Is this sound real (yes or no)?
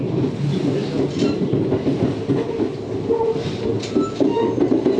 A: yes